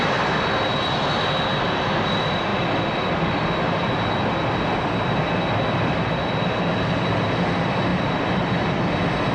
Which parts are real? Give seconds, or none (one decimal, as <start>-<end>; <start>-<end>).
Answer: 0.0-9.3